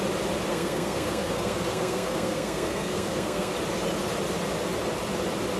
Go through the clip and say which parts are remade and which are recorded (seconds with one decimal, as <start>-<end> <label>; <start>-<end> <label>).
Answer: 0.0-0.5 recorded; 0.5-3.5 remade; 3.5-5.6 recorded